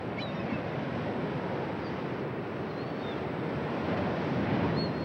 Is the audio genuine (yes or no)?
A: yes